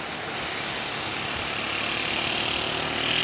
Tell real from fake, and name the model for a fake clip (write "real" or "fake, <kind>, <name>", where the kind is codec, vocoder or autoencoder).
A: real